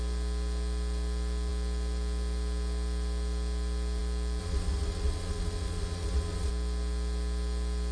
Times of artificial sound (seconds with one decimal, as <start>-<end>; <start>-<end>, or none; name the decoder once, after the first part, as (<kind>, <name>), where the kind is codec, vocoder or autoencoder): 4.4-6.5 (vocoder, Vocos)